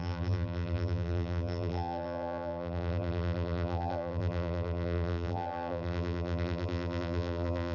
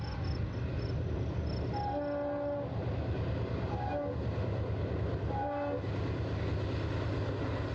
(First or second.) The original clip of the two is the second